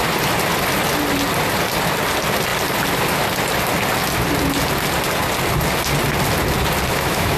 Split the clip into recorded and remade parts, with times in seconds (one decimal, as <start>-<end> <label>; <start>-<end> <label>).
0.0-6.9 recorded; 6.9-7.4 remade